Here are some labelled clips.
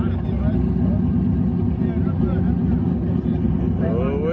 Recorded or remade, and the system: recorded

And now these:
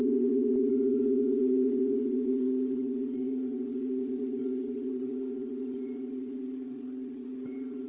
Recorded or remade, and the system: remade, vocoder, Vocos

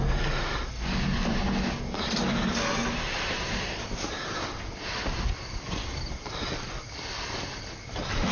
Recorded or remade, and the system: recorded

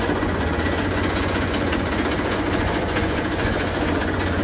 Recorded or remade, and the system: remade, vocoder, Vocos